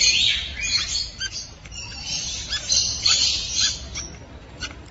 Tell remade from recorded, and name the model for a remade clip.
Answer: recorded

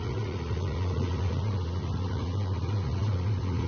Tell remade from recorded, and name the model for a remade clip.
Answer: remade, vocoder, Vocos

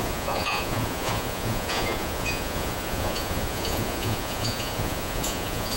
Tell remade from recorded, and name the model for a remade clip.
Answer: remade, vocoder, Vocos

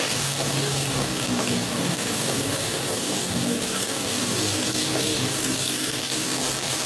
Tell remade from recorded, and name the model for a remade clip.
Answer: remade, codec, DAC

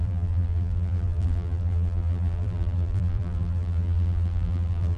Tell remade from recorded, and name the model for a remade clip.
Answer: remade, vocoder, BigVGAN v2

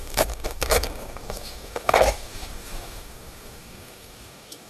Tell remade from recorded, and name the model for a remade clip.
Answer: remade, codec, DAC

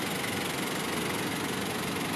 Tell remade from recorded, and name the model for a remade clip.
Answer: recorded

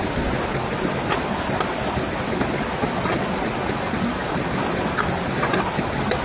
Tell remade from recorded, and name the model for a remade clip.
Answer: recorded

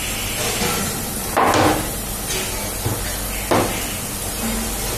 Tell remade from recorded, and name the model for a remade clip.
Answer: recorded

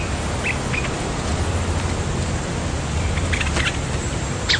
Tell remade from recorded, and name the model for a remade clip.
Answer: recorded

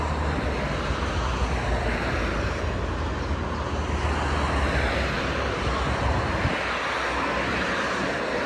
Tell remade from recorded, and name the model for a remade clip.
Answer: recorded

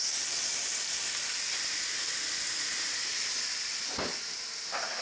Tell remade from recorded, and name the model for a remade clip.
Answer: recorded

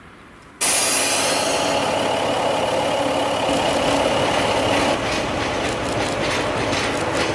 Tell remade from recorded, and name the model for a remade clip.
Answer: recorded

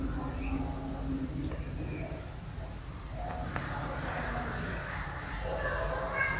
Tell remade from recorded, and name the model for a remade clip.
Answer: recorded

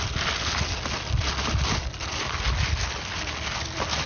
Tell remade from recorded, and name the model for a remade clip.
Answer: recorded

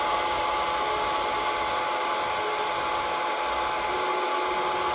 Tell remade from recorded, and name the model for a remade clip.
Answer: recorded